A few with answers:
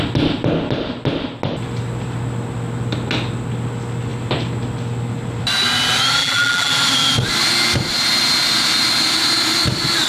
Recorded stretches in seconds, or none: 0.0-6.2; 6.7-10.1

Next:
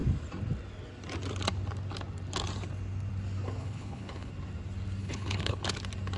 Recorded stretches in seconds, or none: 0.0-3.6; 4.3-5.0; 5.6-6.2

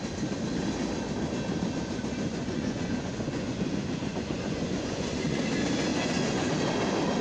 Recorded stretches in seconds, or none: 0.0-2.3; 5.4-5.9; 6.5-7.2

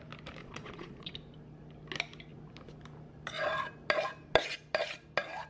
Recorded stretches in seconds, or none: 0.0-0.4; 1.1-5.5

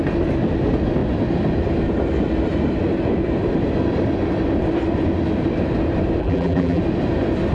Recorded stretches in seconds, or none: 0.0-6.2; 6.8-7.5

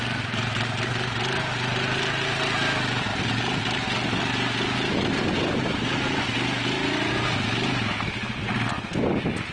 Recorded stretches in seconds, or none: 0.0-9.5